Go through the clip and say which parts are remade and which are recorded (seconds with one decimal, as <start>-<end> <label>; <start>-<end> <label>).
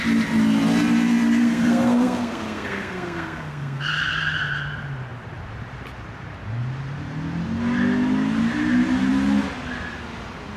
0.0-1.4 recorded; 1.4-3.9 remade; 3.9-10.6 recorded